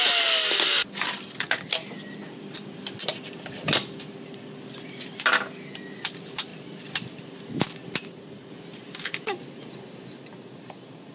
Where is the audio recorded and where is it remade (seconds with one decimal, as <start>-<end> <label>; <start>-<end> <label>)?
0.0-11.1 recorded